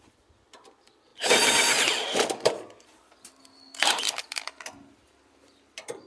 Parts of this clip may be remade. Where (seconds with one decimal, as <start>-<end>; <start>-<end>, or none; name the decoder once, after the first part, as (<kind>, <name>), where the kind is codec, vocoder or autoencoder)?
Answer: 0.0-6.1 (vocoder, BigVGAN v2)